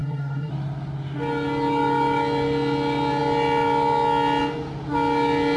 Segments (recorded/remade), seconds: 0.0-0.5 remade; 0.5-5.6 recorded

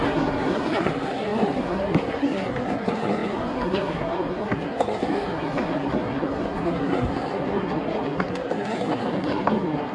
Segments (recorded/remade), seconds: 0.0-9.9 remade

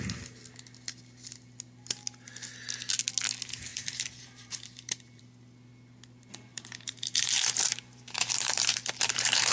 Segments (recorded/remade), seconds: 0.0-3.7 recorded; 3.7-5.2 remade; 5.2-6.5 recorded; 6.5-9.5 remade

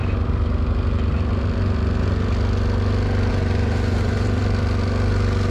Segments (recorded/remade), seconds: 0.0-3.3 recorded; 3.3-4.4 remade; 4.4-5.5 recorded

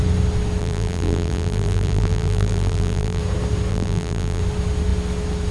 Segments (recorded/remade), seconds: 0.0-0.6 recorded; 0.6-3.2 remade; 3.2-3.7 recorded; 3.7-4.4 remade; 4.4-5.5 recorded

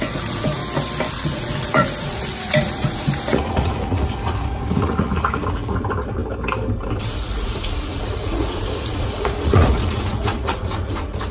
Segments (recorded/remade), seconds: 0.0-0.6 remade; 0.6-1.1 recorded; 1.1-6.2 remade; 6.2-7.0 recorded; 7.0-11.3 remade